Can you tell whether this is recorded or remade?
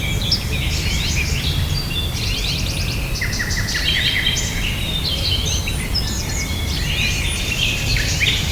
recorded